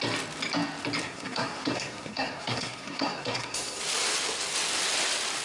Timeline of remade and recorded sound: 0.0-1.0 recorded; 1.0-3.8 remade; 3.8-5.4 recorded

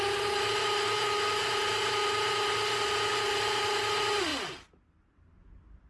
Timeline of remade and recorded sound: 0.0-5.9 recorded